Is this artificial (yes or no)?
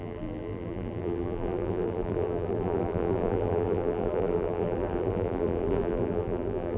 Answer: yes